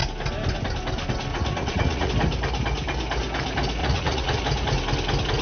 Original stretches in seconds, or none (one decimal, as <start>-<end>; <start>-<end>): 0.0-1.3; 2.1-3.8; 4.4-5.4